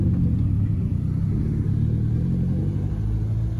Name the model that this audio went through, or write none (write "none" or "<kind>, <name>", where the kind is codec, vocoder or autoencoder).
none